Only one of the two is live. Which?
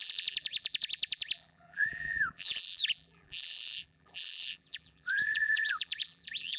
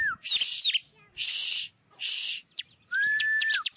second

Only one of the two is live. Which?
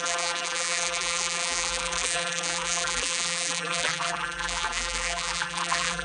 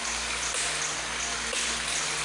second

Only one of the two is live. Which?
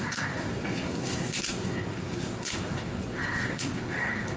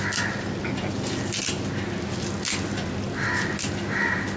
second